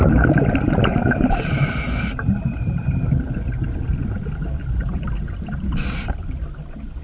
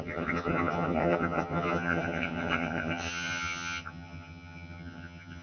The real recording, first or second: first